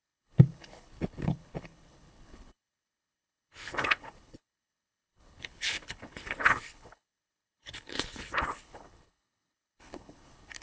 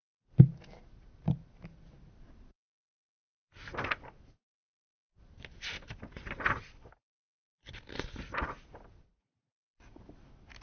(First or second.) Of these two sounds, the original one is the second